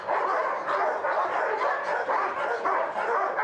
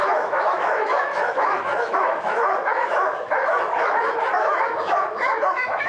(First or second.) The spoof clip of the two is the second